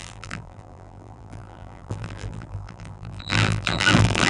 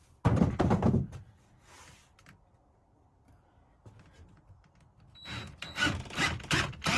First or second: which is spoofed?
first